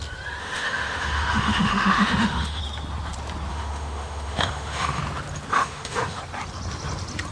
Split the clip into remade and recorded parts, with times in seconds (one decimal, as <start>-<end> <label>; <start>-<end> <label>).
0.0-0.4 recorded; 0.4-2.6 remade; 2.6-3.5 recorded; 3.5-5.0 remade; 5.0-5.5 recorded; 5.5-6.2 remade; 6.2-7.3 recorded